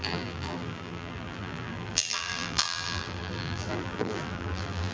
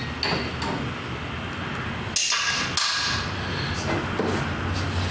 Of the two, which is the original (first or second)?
second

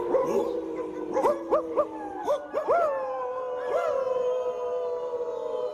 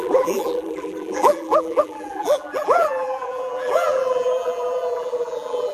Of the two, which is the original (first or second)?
first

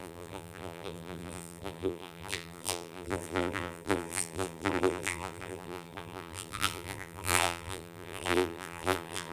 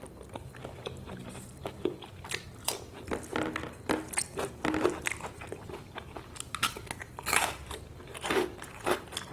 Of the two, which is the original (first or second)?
second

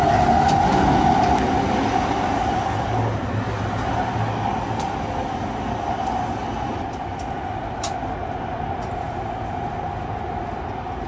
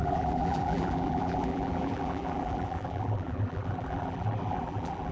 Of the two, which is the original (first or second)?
first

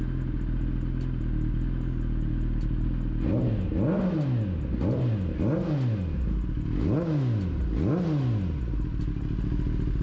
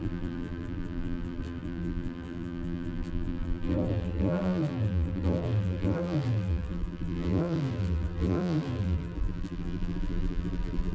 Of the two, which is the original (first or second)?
first